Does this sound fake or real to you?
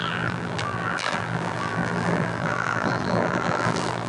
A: fake